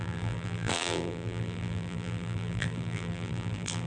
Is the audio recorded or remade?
remade